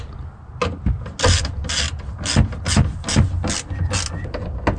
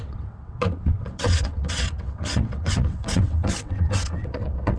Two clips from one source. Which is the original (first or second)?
first